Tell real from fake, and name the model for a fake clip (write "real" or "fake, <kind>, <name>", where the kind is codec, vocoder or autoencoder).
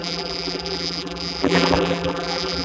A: fake, vocoder, BigVGAN v2